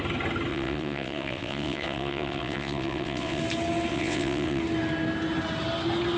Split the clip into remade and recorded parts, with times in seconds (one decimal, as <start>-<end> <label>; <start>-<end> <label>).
0.0-0.5 recorded; 0.5-3.4 remade; 3.4-3.9 recorded; 3.9-4.6 remade; 4.6-6.2 recorded